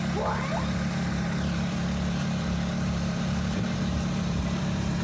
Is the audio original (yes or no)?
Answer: no